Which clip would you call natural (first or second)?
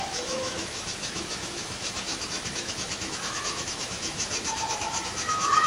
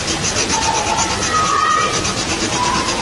second